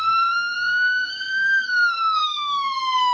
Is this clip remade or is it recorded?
remade